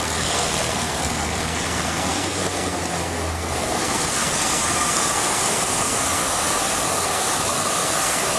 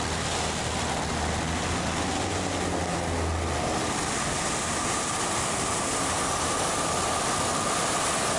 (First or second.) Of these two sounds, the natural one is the second